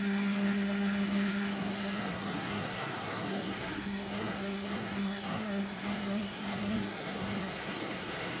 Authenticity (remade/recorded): remade